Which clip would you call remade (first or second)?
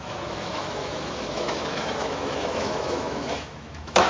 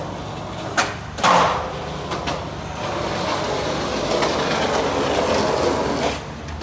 first